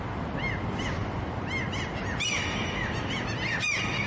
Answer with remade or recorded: recorded